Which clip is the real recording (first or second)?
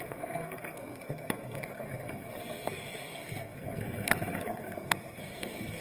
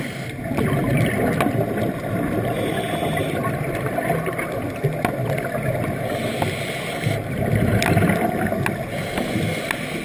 second